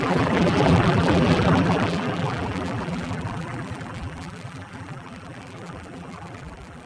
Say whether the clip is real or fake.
fake